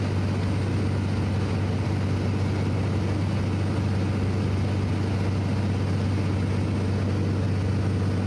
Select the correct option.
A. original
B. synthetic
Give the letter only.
A